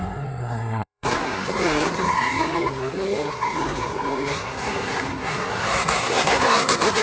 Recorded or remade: remade